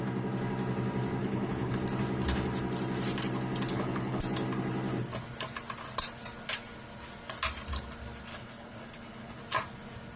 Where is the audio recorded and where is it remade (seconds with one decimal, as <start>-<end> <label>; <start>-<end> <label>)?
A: 0.0-1.2 recorded; 1.2-1.7 remade; 1.7-3.7 recorded; 3.7-4.2 remade; 4.2-8.3 recorded; 8.3-9.4 remade; 9.4-10.2 recorded